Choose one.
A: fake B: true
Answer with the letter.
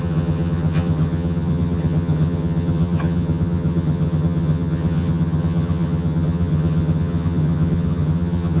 A